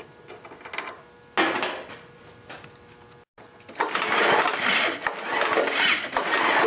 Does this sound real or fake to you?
real